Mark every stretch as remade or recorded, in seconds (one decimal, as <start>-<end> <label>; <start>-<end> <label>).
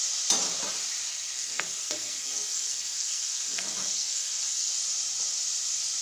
0.0-1.1 recorded; 1.1-4.7 remade; 4.7-6.0 recorded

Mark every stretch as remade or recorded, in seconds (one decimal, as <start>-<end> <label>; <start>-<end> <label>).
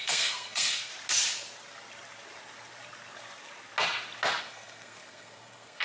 0.0-0.9 remade; 0.9-4.4 recorded; 4.4-5.8 remade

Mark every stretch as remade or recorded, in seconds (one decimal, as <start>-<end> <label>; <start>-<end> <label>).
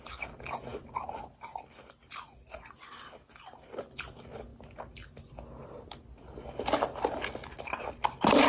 0.0-8.5 recorded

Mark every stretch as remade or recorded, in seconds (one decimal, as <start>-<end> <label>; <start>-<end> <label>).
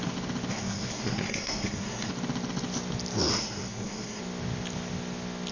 0.0-0.5 recorded; 0.5-2.1 remade; 2.1-3.3 recorded; 3.3-4.2 remade; 4.2-5.5 recorded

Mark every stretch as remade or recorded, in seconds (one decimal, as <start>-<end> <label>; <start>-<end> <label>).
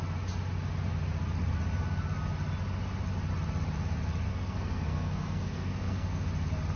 0.0-4.3 recorded; 4.3-6.3 remade; 6.3-6.8 recorded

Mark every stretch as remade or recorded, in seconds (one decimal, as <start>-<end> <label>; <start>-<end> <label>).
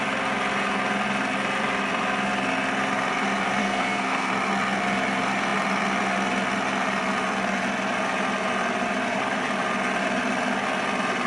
0.0-3.6 recorded; 3.6-4.3 remade; 4.3-11.3 recorded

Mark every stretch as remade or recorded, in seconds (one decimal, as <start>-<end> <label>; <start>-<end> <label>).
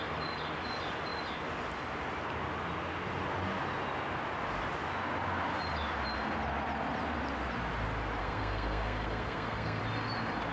0.0-8.2 recorded; 8.2-9.8 remade; 9.8-10.5 recorded